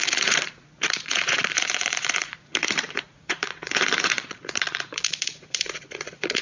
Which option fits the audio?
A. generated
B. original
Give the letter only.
A